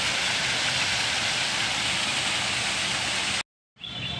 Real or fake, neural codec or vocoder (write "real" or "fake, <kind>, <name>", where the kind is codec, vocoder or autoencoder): real